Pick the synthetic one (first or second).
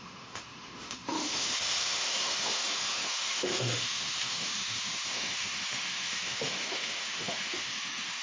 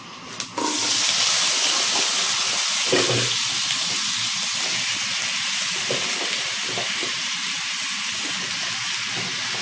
first